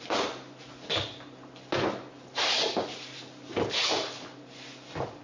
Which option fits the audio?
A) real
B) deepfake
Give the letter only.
A